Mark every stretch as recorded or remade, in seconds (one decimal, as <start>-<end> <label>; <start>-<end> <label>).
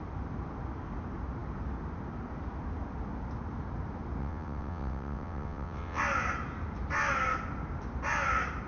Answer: 0.0-4.2 recorded; 4.2-6.0 remade; 6.0-8.7 recorded